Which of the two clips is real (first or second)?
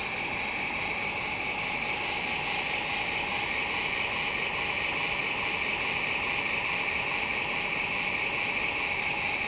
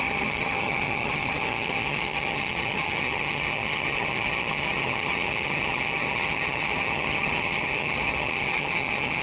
first